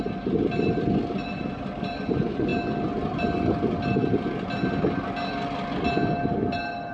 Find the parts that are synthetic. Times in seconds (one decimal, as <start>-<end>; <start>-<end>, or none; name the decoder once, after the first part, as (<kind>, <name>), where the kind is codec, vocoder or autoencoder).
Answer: none